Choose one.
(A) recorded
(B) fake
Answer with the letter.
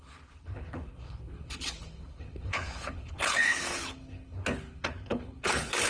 B